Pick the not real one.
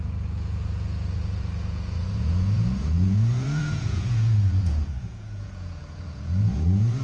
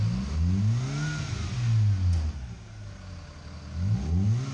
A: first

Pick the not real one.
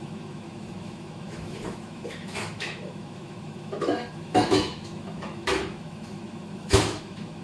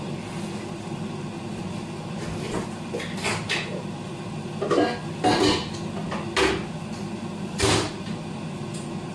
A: first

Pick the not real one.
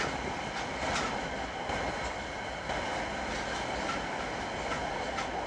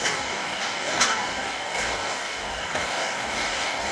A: second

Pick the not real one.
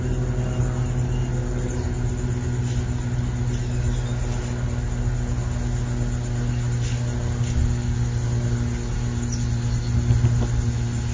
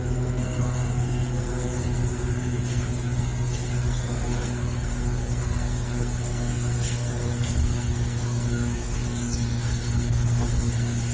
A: second